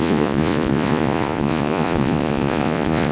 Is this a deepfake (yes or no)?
yes